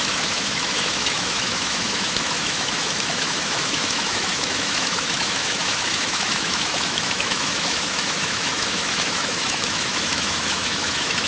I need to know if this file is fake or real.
fake